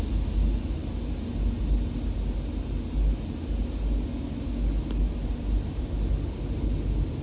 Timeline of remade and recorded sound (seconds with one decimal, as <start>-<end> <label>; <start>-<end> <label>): 0.0-7.2 recorded